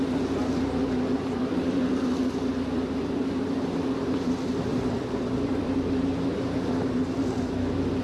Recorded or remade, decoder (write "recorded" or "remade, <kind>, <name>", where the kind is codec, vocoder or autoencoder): remade, vocoder, BigVGAN v2